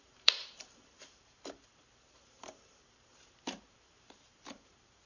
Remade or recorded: remade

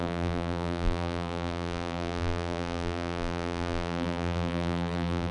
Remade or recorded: remade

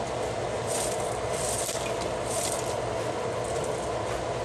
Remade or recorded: recorded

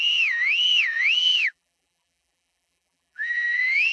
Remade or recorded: remade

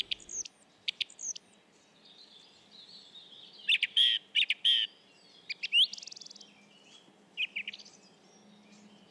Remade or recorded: recorded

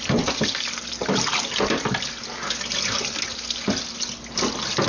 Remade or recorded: recorded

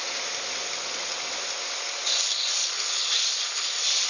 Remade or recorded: recorded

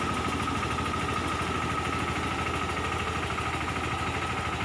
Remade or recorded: recorded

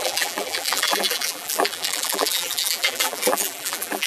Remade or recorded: remade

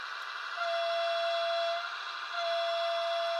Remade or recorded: recorded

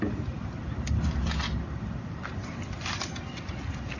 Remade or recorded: recorded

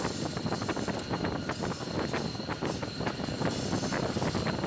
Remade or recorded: recorded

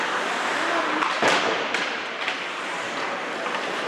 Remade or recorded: remade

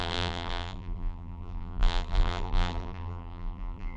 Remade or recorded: remade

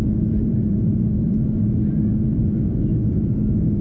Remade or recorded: remade